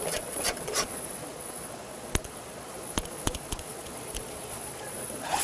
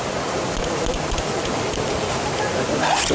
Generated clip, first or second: first